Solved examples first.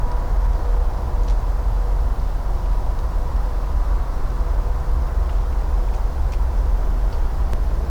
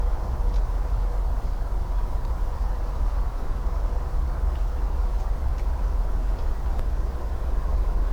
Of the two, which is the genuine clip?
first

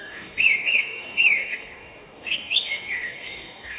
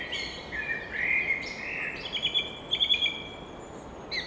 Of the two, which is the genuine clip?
second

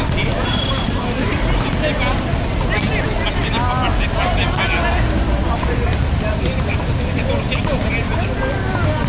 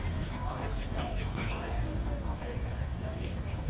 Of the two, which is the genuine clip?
first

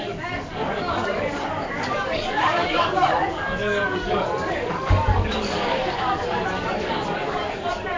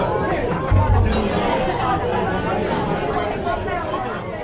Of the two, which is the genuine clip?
second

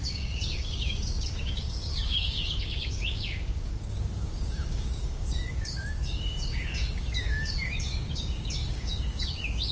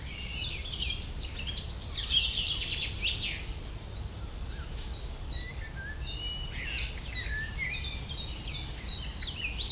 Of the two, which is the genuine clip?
second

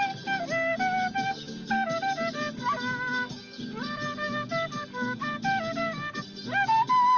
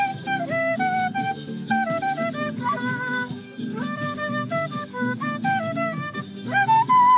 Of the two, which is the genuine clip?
first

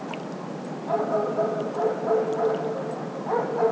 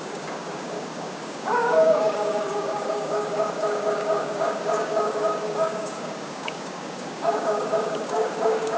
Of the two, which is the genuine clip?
first